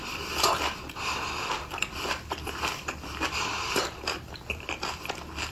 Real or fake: fake